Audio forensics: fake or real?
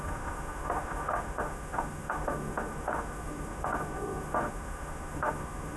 fake